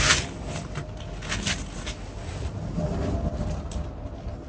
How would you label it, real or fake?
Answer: real